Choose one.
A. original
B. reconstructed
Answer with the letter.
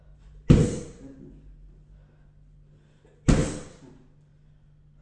A